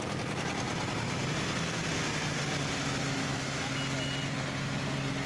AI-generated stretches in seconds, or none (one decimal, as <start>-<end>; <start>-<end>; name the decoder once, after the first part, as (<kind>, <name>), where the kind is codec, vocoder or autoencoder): 3.2-3.7 (autoencoder, DAC-VAE)